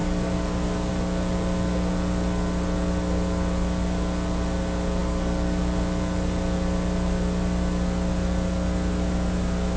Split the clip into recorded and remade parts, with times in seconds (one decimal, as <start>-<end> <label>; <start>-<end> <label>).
0.0-0.9 remade; 0.9-5.0 recorded; 5.0-5.6 remade; 5.6-9.8 recorded